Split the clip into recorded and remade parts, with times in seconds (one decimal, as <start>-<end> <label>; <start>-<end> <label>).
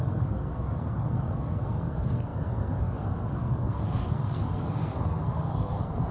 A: 0.0-6.1 remade